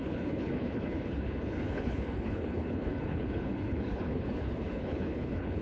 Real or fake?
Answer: fake